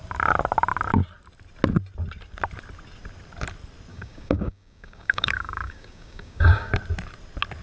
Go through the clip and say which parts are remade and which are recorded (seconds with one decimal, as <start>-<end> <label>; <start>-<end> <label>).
0.0-3.9 recorded; 3.9-6.7 remade; 6.7-7.6 recorded

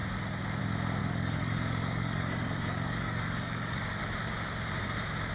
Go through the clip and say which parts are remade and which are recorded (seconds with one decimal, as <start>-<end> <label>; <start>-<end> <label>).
0.0-1.0 recorded; 1.0-4.0 remade; 4.0-5.3 recorded

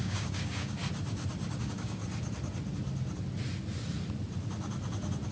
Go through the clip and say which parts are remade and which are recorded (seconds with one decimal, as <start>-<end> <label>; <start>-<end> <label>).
0.0-0.8 remade; 0.8-1.6 recorded; 1.6-2.0 remade; 2.0-5.3 recorded

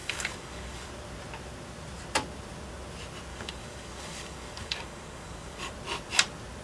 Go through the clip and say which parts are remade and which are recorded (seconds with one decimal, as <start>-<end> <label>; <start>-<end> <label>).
0.0-0.9 remade; 0.9-3.3 recorded; 3.3-5.7 remade; 5.7-6.6 recorded

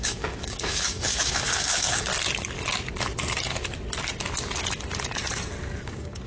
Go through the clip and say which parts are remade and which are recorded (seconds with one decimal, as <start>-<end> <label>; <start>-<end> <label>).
0.0-2.1 remade; 2.1-5.8 recorded; 5.8-6.3 remade

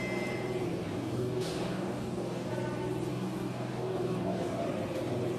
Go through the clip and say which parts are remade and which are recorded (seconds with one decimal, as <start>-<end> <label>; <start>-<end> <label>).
0.0-0.7 recorded; 0.7-2.5 remade; 2.5-3.1 recorded; 3.1-4.6 remade; 4.6-5.4 recorded

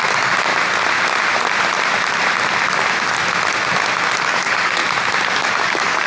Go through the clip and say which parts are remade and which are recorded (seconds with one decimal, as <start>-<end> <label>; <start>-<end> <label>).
0.0-0.5 remade; 0.5-4.2 recorded; 4.2-4.8 remade; 4.8-5.3 recorded; 5.3-6.1 remade